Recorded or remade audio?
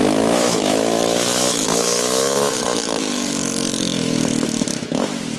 remade